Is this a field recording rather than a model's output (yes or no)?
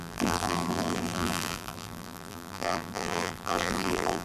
no